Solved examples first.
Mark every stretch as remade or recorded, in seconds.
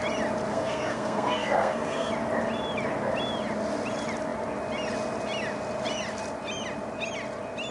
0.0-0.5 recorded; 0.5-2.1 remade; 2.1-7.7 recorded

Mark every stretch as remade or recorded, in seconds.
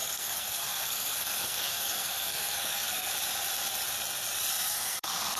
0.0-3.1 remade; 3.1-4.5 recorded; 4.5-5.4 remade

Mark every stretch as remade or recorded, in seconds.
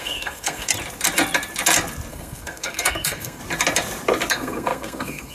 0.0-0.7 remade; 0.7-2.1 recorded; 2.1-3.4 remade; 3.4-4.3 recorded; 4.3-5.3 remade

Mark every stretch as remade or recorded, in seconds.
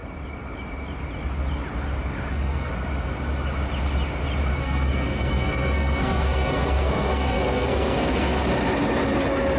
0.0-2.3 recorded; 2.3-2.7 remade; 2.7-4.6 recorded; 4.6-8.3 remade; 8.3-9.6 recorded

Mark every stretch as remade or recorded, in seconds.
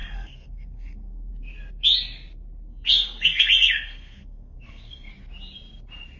0.0-1.3 remade; 1.3-2.7 recorded; 2.7-5.1 remade; 5.1-6.2 recorded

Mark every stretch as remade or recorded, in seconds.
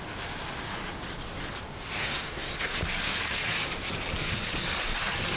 0.0-2.0 recorded; 2.0-2.8 remade; 2.8-5.4 recorded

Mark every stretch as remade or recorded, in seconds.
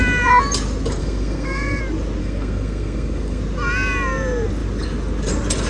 0.0-1.0 recorded; 1.0-1.8 remade; 1.8-2.2 recorded; 2.2-3.4 remade; 3.4-5.7 recorded